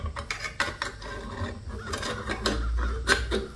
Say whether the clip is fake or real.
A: real